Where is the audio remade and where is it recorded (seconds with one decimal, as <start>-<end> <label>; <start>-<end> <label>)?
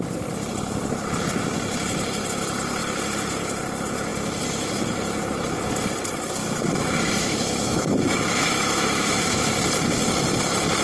0.0-6.4 recorded; 6.4-9.4 remade; 9.4-10.8 recorded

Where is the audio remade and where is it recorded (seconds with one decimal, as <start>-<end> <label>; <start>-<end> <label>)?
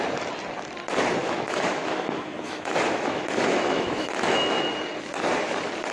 0.0-1.2 recorded; 1.2-4.7 remade; 4.7-5.9 recorded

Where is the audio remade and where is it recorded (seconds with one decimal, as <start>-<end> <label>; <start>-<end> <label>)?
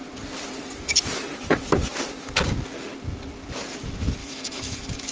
0.0-4.2 recorded; 4.2-5.1 remade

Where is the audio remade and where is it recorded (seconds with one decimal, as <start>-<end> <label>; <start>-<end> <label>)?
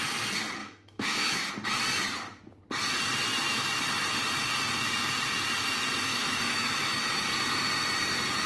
0.0-0.6 recorded; 0.6-1.5 remade; 1.5-6.1 recorded; 6.1-7.3 remade; 7.3-8.5 recorded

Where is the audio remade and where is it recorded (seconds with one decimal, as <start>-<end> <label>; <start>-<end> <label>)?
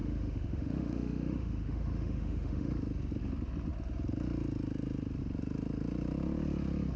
0.0-2.7 remade; 2.7-7.0 recorded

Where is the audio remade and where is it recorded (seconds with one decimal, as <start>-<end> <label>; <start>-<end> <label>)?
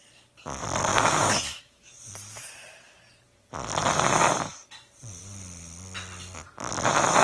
0.0-0.9 recorded; 0.9-1.9 remade; 1.9-7.2 recorded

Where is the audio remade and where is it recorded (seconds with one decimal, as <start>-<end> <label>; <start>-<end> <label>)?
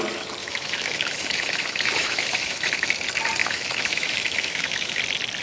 0.0-0.4 recorded; 0.4-3.0 remade; 3.0-3.4 recorded; 3.4-5.0 remade; 5.0-5.4 recorded